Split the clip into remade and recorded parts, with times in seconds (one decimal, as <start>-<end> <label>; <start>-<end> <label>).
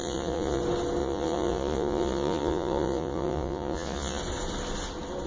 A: 0.0-0.6 remade; 0.6-1.0 recorded; 1.0-4.2 remade; 4.2-5.3 recorded